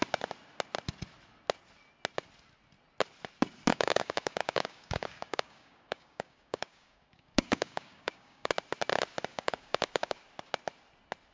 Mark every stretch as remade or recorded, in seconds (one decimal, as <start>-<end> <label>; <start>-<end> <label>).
0.0-3.7 recorded; 3.7-8.5 remade; 8.5-9.3 recorded; 9.3-10.2 remade; 10.2-11.3 recorded